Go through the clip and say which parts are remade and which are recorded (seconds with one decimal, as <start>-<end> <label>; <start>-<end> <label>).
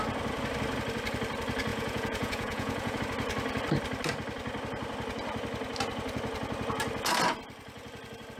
0.0-1.7 recorded; 1.7-3.0 remade; 3.0-8.4 recorded